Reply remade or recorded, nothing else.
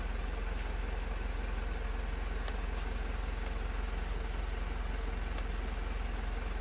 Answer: recorded